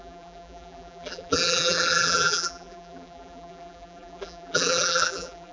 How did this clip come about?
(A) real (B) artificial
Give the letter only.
B